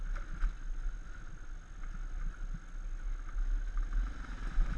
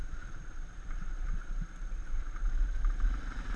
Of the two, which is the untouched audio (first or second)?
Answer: first